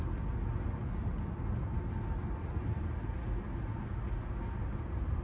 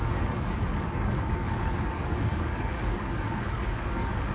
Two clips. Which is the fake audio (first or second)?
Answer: second